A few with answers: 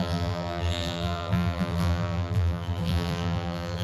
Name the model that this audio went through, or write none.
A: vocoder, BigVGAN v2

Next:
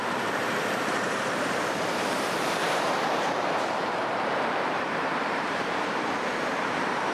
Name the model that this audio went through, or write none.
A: vocoder, BigVGAN v2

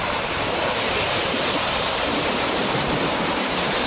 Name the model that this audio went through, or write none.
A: vocoder, BigVGAN v2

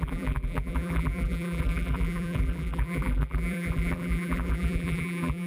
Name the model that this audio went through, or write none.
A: vocoder, BigVGAN v2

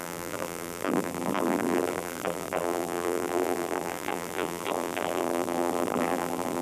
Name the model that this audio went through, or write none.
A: vocoder, BigVGAN v2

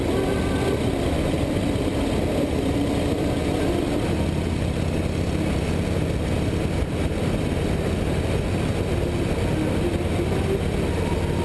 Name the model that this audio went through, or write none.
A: none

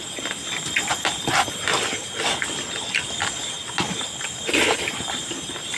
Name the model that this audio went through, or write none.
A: none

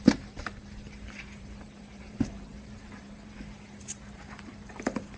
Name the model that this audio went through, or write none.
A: vocoder, BigVGAN v2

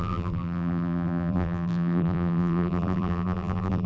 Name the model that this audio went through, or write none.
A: vocoder, BigVGAN v2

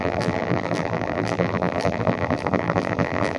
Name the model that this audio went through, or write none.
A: vocoder, BigVGAN v2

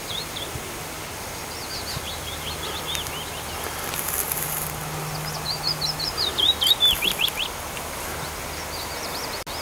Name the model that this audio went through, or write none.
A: none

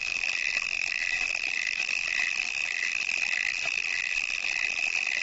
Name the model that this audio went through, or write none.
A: vocoder, BigVGAN v2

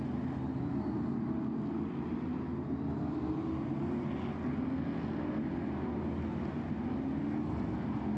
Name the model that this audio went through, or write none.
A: none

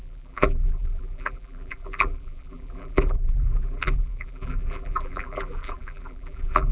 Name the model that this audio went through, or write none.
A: vocoder, BigVGAN v2